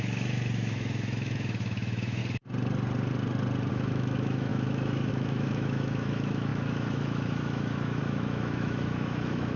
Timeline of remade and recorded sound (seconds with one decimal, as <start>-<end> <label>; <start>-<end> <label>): 0.0-2.2 remade; 2.2-3.7 recorded; 3.7-9.6 remade